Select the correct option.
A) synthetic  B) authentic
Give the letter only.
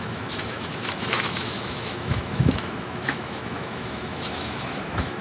A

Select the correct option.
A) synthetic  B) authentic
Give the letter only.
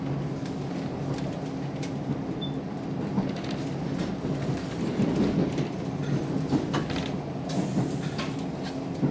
B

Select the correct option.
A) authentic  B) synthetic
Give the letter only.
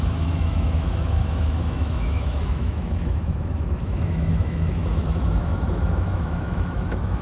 B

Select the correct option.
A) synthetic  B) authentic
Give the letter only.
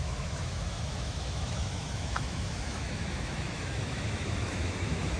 A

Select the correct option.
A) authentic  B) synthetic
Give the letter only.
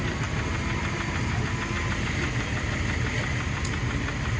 A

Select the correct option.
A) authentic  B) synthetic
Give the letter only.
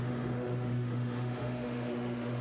B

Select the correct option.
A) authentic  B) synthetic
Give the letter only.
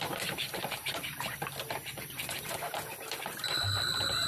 A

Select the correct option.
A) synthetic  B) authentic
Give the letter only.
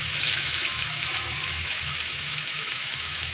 A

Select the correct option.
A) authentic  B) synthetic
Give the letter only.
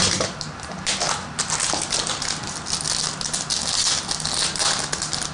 A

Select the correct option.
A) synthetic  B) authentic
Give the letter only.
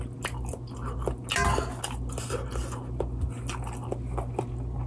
B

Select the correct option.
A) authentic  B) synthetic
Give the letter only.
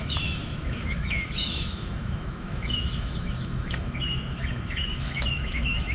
B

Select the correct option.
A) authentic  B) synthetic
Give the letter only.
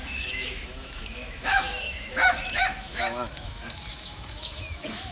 B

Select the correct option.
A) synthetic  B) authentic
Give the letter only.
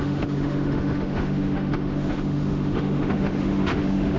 A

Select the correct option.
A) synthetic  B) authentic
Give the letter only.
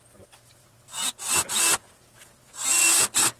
B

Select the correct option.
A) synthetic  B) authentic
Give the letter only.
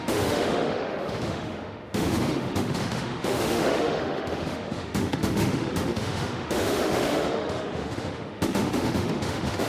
A